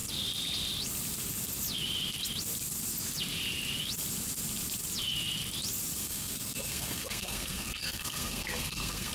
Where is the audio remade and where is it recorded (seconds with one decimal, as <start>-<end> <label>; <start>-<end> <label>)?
0.0-6.0 recorded; 6.0-9.1 remade